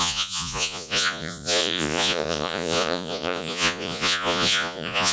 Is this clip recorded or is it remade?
remade